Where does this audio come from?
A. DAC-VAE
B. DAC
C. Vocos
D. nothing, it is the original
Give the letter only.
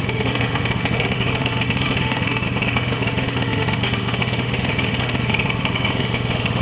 A